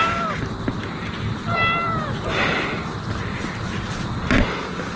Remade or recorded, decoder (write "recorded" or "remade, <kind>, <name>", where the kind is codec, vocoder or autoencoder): recorded